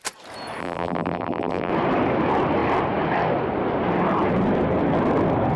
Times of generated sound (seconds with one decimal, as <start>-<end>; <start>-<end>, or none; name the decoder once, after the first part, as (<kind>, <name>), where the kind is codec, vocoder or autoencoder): 0.6-1.7 (vocoder, BigVGAN v2)